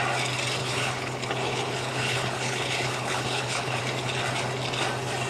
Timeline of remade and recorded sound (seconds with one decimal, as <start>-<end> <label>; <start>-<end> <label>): 0.0-0.6 recorded; 0.6-3.8 remade; 3.8-5.3 recorded

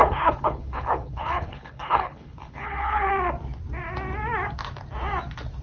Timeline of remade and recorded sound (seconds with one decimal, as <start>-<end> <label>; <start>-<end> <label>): 0.0-3.1 remade; 3.1-5.6 recorded

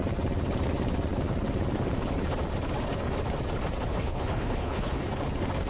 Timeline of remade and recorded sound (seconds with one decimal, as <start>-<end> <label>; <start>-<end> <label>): 0.0-3.9 recorded; 3.9-5.1 remade; 5.1-5.7 recorded

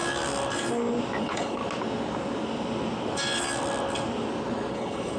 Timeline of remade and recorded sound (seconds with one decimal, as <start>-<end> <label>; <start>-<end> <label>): 0.0-1.2 recorded; 1.2-1.6 remade; 1.6-4.7 recorded; 4.7-5.2 remade

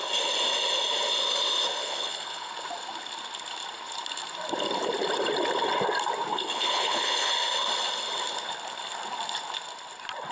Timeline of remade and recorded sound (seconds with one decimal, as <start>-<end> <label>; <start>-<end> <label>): 0.0-1.8 recorded; 1.8-2.5 remade; 2.5-6.3 recorded; 6.3-7.3 remade; 7.3-10.3 recorded

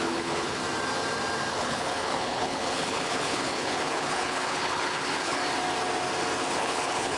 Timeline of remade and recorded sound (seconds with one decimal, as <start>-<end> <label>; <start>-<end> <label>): 0.0-0.6 remade; 0.6-1.5 recorded; 1.5-5.4 remade; 5.4-6.5 recorded; 6.5-7.2 remade

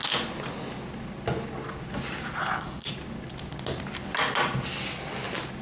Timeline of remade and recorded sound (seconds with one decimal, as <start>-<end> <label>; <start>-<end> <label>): 0.0-2.4 recorded; 2.4-2.9 remade; 2.9-5.6 recorded